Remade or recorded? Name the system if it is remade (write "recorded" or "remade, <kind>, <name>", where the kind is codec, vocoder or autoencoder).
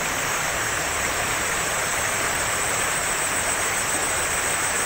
remade, vocoder, BigVGAN v2